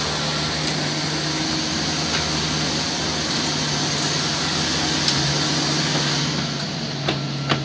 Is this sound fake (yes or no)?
no